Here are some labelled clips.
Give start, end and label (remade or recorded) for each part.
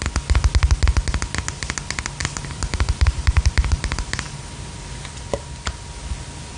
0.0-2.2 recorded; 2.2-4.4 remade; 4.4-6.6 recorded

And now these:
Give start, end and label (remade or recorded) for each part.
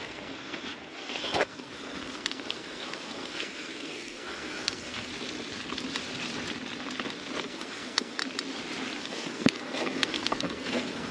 0.0-5.1 remade; 5.1-7.4 recorded; 7.4-8.2 remade; 8.2-9.0 recorded; 9.0-11.1 remade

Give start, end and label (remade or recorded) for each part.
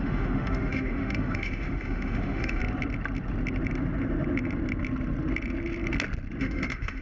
0.0-2.6 remade; 2.6-6.4 recorded; 6.4-7.0 remade